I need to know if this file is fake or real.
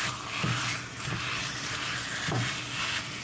real